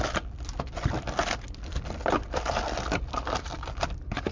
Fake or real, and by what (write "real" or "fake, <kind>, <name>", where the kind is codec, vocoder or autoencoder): real